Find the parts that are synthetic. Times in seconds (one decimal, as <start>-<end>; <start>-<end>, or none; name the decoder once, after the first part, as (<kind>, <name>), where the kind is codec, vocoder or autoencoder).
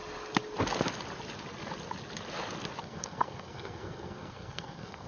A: 2.8-5.1 (codec, SNAC)